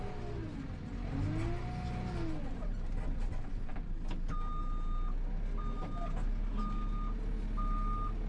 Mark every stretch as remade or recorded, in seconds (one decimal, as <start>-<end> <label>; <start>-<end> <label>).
0.0-8.3 recorded